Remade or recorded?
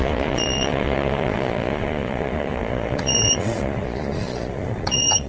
remade